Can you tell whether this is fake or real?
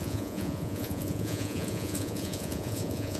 fake